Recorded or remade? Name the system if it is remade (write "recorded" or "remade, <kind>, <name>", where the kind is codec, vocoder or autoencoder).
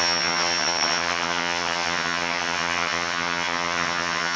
remade, vocoder, HiFi-GAN